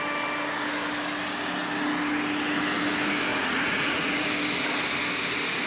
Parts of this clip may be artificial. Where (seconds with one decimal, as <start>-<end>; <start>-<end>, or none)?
3.3-4.3